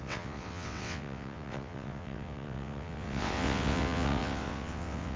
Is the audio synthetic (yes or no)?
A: yes